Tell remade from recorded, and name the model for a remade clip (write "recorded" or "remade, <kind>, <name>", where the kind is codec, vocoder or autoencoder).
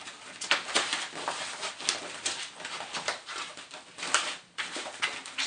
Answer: recorded